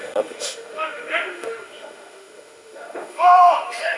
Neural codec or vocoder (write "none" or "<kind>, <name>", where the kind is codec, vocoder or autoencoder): autoencoder, DAC-VAE